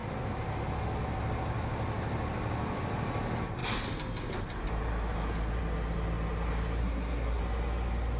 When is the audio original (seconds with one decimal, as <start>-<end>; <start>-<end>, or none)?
0.0-6.8; 7.4-8.2